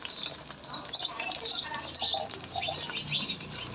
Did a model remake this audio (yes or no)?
no